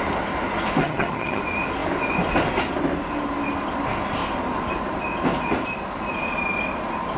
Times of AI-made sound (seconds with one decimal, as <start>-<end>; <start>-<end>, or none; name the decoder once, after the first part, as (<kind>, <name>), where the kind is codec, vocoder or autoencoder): 0.8-1.4 (vocoder, HiFi-GAN)